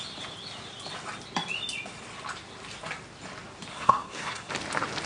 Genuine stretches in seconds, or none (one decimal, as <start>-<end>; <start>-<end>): 0.0-3.7; 4.5-5.1